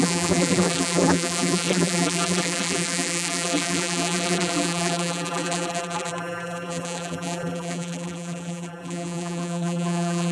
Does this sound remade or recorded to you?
remade